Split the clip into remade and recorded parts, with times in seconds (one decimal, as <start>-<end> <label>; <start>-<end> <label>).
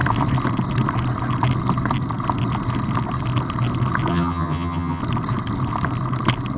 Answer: 0.0-4.1 recorded; 4.1-5.0 remade; 5.0-6.6 recorded